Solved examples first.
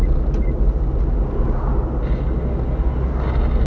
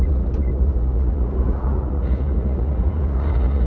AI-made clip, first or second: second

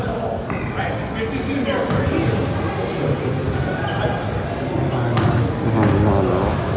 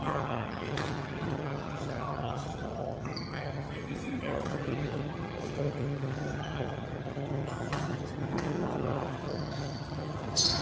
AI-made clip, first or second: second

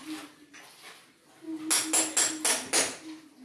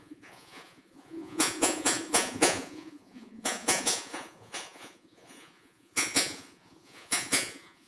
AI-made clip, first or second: second